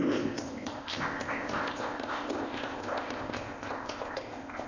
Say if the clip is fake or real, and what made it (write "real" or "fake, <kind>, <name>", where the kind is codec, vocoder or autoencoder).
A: fake, codec, ZipCodec